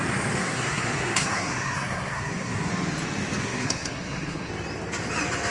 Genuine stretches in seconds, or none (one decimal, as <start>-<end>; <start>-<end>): 0.0-0.4; 2.7-3.4; 4.5-5.5